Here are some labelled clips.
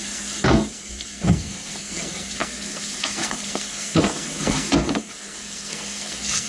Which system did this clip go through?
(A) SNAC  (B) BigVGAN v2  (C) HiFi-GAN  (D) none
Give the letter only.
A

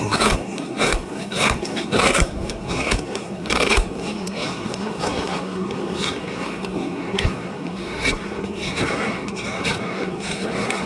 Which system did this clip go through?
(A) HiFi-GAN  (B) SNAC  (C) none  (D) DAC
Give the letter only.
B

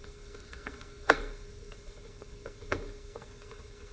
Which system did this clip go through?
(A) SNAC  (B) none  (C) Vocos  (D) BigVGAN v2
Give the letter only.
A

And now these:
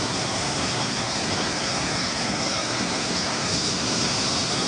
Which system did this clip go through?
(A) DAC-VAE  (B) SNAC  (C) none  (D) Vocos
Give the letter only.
B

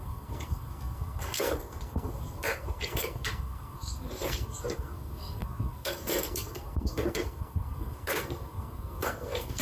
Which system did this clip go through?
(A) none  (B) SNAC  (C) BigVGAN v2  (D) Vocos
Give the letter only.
B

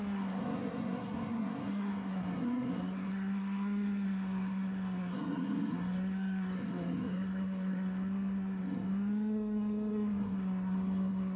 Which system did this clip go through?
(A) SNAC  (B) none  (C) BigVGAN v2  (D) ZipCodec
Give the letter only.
A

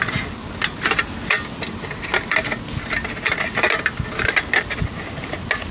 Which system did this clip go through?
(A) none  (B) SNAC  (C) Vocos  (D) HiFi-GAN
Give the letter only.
A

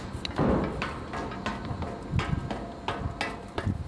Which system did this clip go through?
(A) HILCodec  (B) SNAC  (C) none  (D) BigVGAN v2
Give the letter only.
C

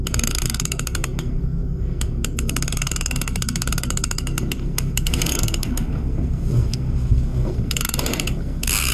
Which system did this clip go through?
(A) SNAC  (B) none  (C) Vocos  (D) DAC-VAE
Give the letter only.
A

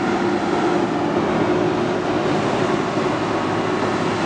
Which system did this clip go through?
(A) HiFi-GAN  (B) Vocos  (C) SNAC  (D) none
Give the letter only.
D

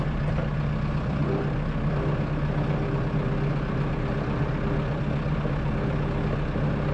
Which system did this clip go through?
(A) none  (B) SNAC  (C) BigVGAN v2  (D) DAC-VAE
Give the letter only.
A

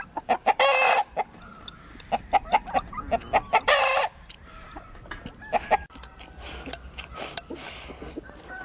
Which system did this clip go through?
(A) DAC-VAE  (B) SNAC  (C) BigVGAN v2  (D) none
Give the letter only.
D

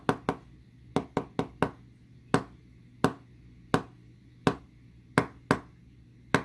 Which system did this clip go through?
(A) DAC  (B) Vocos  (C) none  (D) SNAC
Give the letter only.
C